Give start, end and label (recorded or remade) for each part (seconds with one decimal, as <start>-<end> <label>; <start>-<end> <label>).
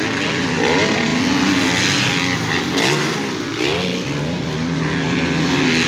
0.0-5.9 recorded